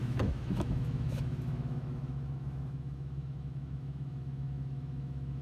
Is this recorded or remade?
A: remade